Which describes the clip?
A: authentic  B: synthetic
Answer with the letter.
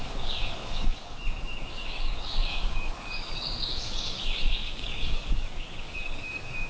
B